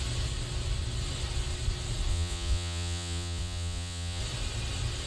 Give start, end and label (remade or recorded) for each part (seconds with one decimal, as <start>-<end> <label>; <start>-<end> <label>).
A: 0.0-2.1 recorded; 2.1-4.2 remade; 4.2-5.1 recorded

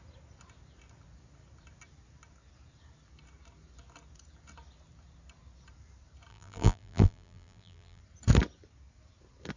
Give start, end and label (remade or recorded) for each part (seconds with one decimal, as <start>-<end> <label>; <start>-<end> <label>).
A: 0.0-6.3 recorded; 6.3-8.0 remade; 8.0-9.6 recorded

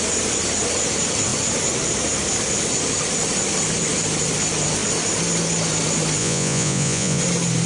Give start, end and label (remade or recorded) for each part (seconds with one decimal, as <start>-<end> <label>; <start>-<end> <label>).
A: 0.0-6.2 recorded; 6.2-7.2 remade; 7.2-7.7 recorded

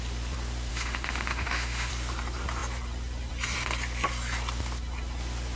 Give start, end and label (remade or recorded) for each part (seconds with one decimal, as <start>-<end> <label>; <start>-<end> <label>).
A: 0.0-0.7 recorded; 0.7-1.9 remade; 1.9-5.6 recorded

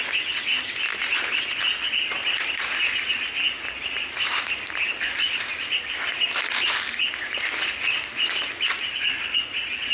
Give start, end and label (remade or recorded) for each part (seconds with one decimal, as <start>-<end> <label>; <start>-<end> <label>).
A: 0.0-9.9 recorded

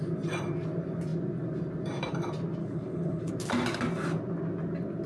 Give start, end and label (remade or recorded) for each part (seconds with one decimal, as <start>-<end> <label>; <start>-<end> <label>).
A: 0.0-2.6 recorded; 2.6-3.3 remade; 3.3-5.1 recorded